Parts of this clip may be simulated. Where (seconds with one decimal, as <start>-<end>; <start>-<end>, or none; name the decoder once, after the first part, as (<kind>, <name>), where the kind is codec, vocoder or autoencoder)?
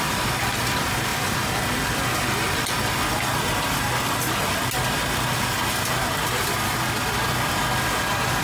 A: none